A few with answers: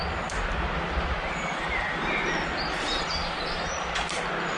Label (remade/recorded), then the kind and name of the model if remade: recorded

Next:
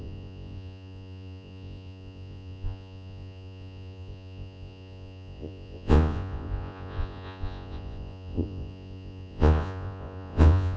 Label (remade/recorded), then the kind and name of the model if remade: remade, vocoder, Vocos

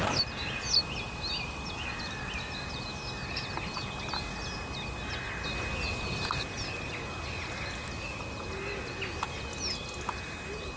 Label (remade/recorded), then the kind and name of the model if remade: recorded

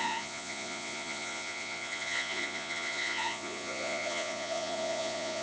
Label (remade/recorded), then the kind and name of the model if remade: remade, vocoder, Vocos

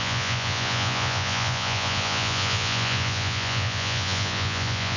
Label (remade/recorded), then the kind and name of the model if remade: remade, vocoder, Vocos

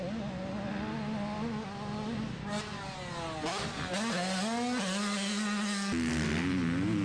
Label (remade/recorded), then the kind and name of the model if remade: recorded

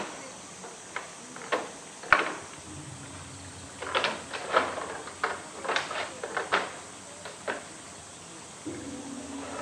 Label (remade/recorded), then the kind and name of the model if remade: recorded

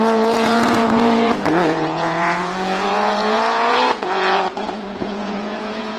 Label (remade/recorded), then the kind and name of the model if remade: remade, vocoder, Vocos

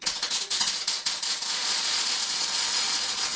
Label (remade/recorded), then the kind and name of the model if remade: remade, vocoder, Vocos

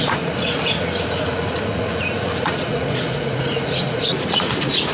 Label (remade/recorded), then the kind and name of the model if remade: remade, vocoder, Vocos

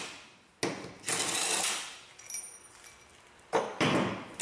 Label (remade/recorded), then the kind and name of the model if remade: recorded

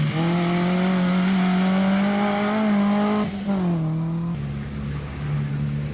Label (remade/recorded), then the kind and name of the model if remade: recorded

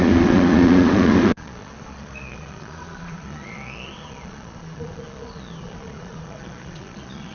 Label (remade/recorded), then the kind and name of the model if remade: remade, vocoder, Vocos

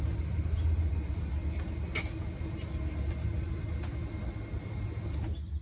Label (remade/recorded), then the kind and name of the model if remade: recorded